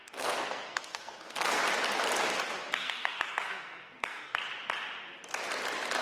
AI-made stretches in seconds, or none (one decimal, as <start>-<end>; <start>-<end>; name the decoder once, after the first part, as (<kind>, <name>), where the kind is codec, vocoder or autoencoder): 0.0-1.6 (codec, SNAC); 2.7-4.4